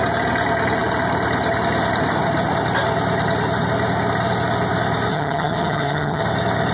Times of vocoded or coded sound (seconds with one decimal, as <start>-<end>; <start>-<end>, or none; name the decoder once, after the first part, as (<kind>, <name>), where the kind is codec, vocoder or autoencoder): 5.1-6.2 (vocoder, HiFi-GAN)

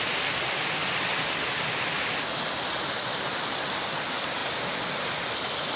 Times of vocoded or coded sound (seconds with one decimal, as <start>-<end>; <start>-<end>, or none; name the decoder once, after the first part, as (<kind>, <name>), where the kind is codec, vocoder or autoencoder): none

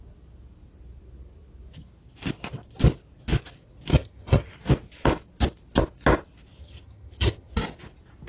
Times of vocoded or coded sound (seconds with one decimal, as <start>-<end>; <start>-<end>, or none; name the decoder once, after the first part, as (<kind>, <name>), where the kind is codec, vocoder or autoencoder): 3.9-4.5 (vocoder, HiFi-GAN); 6.6-7.5

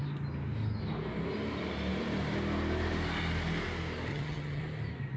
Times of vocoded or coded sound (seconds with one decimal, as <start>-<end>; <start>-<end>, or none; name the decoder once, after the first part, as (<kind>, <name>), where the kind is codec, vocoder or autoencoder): 4.1-4.6 (vocoder, HiFi-GAN)

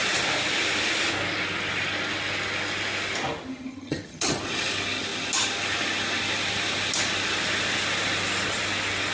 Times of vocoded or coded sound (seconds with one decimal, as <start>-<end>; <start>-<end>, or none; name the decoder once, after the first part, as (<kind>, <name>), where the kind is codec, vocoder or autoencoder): 3.7-4.4 (vocoder, HiFi-GAN)

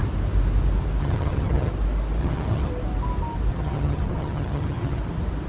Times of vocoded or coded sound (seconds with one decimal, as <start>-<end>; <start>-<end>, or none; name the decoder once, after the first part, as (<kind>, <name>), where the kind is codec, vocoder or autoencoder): 1.0-1.7 (vocoder, HiFi-GAN); 2.2-2.7; 3.5-5.0

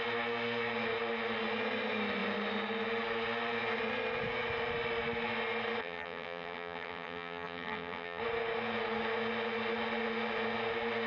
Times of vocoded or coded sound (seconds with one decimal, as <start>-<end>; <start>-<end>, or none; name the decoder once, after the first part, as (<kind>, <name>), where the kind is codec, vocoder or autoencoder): 5.8-8.2 (vocoder, HiFi-GAN)